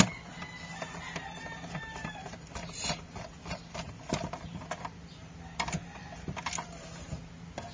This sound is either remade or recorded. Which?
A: recorded